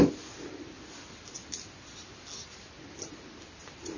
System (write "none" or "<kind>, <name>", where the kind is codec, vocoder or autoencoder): none